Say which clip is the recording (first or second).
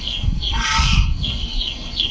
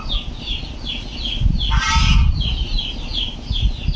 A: second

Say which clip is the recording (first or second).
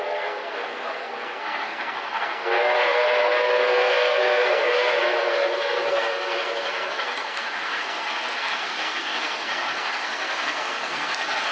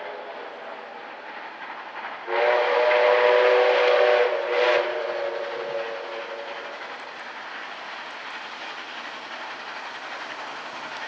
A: second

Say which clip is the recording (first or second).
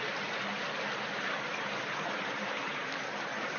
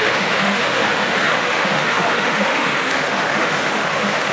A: first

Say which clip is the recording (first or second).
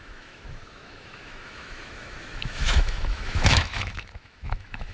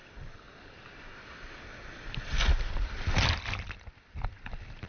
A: second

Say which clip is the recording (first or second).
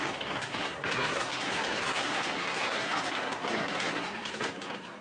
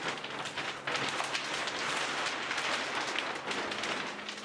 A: second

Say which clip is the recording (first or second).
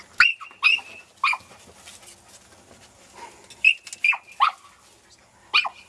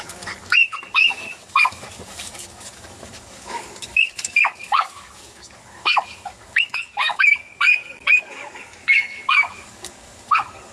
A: first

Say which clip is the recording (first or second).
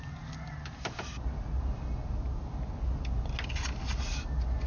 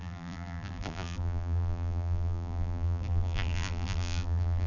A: first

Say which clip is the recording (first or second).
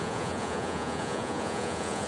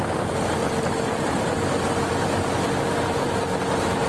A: second